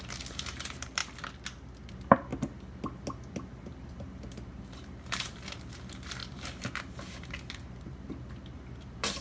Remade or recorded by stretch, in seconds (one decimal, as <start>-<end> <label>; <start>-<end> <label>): 0.0-1.0 remade; 1.0-1.9 recorded; 1.9-2.3 remade; 2.3-3.9 recorded; 3.9-9.2 remade